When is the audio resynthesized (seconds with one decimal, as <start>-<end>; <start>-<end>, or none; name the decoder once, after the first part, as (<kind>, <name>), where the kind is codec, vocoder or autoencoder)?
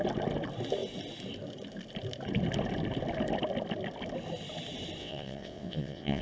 5.0-6.2 (vocoder, WaveNeXt)